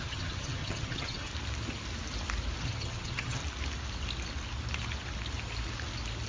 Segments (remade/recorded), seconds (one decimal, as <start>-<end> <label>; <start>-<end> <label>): 0.0-1.3 remade; 1.3-2.6 recorded; 2.6-3.4 remade; 3.4-6.3 recorded